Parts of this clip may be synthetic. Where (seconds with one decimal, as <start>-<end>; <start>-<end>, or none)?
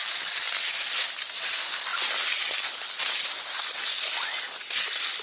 none